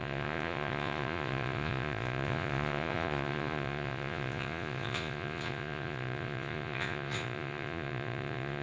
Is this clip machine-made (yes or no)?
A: yes